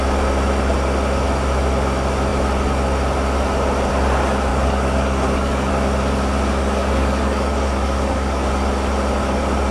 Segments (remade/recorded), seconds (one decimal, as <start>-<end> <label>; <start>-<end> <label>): 0.0-4.5 recorded; 4.5-5.7 remade; 5.7-6.6 recorded; 6.6-8.5 remade; 8.5-9.7 recorded

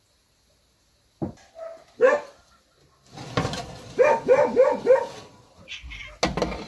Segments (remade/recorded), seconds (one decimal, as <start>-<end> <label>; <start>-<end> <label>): 0.0-6.7 recorded